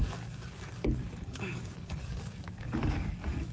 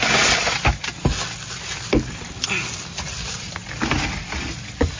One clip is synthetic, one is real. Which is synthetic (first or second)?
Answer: first